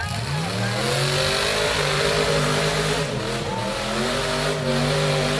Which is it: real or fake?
real